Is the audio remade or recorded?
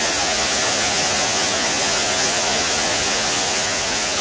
remade